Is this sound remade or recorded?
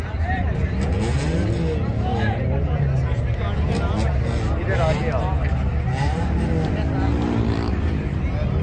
recorded